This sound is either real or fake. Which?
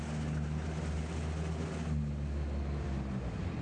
real